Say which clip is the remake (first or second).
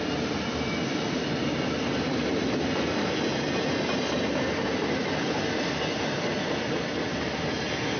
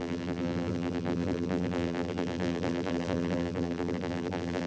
second